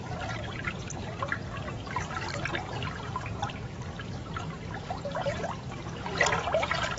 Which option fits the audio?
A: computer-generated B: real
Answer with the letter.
B